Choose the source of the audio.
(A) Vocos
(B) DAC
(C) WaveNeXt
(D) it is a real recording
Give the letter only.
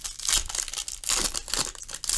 D